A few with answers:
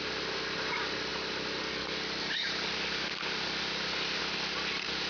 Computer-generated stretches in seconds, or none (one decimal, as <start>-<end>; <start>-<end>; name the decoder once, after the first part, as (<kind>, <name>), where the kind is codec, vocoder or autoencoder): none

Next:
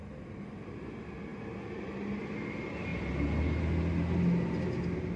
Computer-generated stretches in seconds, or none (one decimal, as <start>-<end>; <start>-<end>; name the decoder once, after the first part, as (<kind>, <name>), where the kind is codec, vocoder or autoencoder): none

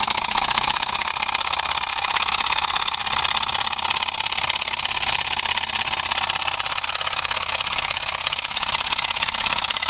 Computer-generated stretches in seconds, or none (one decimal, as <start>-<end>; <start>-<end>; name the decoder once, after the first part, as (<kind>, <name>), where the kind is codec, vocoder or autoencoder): 0.0-1.1 (autoencoder, DAC-VAE); 1.9-3.0; 6.9-9.9

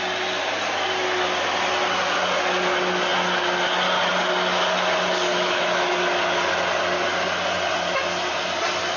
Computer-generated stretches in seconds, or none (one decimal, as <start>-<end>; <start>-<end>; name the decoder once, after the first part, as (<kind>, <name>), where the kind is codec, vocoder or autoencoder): 5.3-5.9 (autoencoder, DAC-VAE)